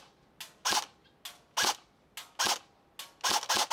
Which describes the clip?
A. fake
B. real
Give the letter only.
B